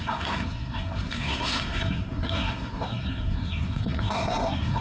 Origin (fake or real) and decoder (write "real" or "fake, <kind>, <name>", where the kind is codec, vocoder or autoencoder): fake, codec, SNAC